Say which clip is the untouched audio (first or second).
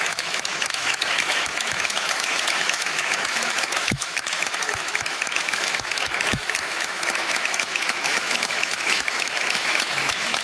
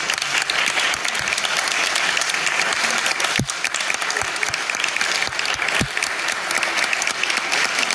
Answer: second